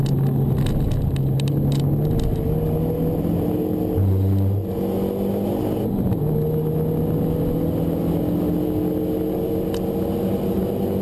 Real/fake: real